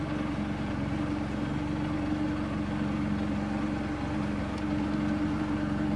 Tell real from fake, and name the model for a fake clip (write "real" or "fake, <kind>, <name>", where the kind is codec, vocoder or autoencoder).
real